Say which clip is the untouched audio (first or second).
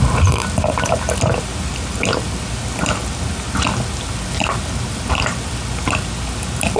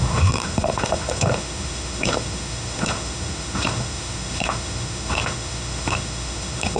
first